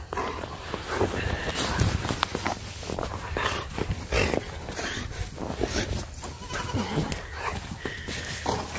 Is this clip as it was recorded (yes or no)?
yes